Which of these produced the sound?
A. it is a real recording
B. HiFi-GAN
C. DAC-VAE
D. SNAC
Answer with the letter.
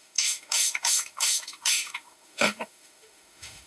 C